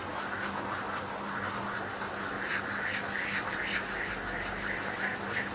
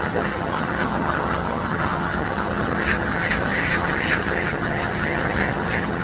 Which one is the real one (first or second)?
first